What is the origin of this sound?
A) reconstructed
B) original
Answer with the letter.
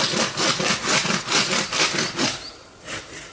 B